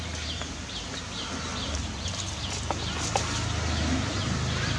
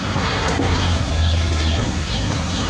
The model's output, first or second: second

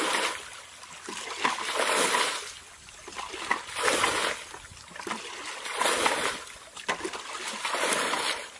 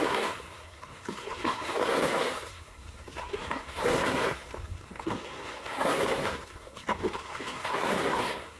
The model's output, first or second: second